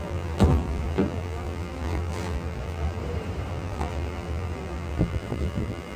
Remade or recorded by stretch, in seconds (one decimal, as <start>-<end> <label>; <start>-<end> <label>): 0.0-3.0 remade; 3.0-3.5 recorded; 3.5-6.0 remade